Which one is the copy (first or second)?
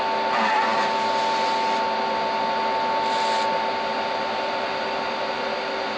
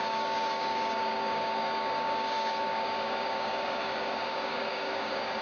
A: second